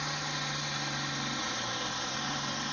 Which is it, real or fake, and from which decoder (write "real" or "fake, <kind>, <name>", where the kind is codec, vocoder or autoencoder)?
real